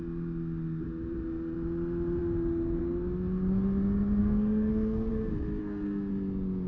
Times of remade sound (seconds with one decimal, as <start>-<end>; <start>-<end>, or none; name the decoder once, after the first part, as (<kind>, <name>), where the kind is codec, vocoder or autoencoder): 4.2-5.1 (codec, SNAC); 5.6-6.1